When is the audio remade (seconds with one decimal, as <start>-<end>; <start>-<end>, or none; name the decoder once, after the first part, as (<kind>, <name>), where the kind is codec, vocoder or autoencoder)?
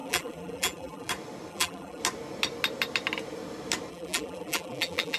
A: 0.0-1.1 (vocoder, BigVGAN v2); 1.5-2.0; 3.9-5.2